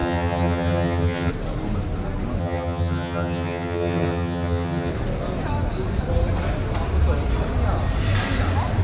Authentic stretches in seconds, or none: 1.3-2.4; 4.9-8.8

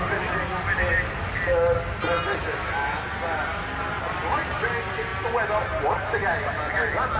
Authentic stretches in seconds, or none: 0.0-7.2

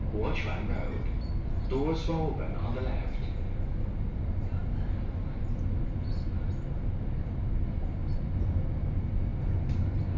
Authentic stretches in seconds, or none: 0.0-10.2

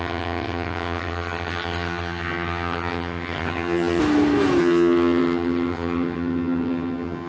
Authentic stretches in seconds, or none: 4.0-4.6